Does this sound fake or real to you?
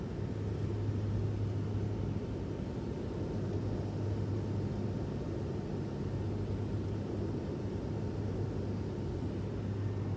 real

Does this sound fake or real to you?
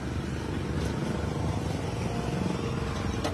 real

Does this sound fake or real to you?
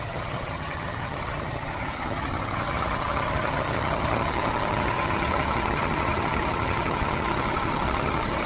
fake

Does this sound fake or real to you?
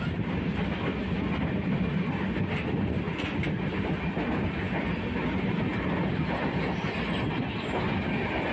real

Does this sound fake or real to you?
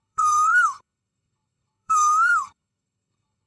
fake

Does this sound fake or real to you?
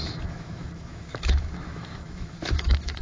fake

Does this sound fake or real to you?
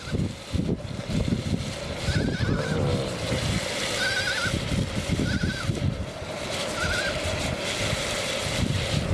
real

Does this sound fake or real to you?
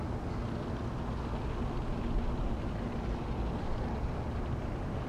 real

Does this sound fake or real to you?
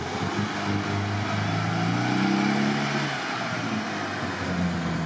real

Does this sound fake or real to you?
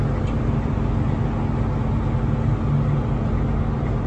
real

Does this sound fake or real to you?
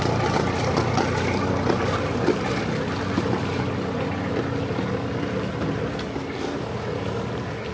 real